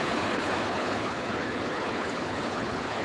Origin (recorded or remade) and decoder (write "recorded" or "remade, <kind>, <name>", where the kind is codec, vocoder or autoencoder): remade, codec, HILCodec